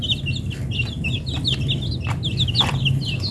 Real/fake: real